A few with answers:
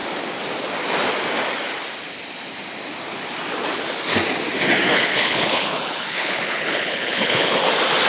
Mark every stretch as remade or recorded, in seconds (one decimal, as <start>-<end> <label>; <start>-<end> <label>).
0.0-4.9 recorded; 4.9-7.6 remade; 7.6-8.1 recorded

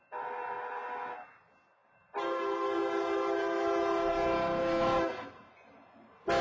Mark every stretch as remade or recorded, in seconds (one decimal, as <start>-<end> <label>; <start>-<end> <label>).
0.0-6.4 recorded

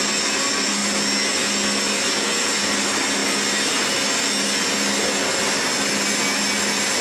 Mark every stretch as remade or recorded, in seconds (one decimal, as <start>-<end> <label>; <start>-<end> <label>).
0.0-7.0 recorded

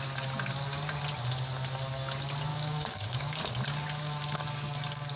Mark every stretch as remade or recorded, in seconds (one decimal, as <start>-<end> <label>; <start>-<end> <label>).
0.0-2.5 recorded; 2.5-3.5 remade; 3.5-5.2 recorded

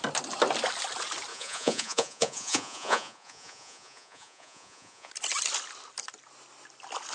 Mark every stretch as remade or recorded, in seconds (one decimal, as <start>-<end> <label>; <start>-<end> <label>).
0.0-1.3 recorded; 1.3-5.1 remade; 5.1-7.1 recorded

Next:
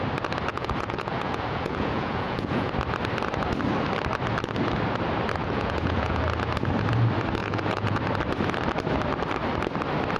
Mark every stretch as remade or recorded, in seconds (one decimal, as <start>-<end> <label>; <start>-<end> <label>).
0.0-0.5 recorded; 0.5-2.7 remade; 2.7-5.4 recorded; 5.4-6.2 remade; 6.2-7.4 recorded; 7.4-8.0 remade; 8.0-10.2 recorded

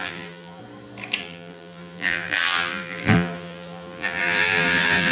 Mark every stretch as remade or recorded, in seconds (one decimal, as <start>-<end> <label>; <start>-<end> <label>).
0.0-0.6 remade; 0.6-1.2 recorded; 1.2-5.1 remade

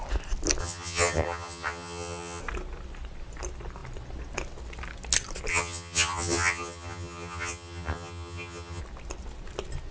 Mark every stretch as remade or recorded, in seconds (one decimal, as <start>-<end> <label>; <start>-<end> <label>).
0.0-0.6 recorded; 0.6-2.4 remade; 2.4-5.5 recorded; 5.5-8.8 remade; 8.8-9.9 recorded